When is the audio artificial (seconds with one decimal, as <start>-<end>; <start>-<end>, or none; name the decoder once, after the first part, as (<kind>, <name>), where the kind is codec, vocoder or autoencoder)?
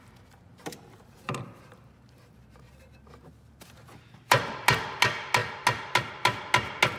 0.5-4.4 (vocoder, BigVGAN v2)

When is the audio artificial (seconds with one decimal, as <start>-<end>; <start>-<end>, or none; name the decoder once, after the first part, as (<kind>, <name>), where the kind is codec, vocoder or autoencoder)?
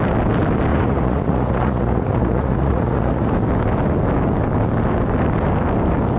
0.7-3.3 (vocoder, Vocos)